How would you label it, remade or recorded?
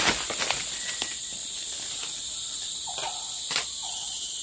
recorded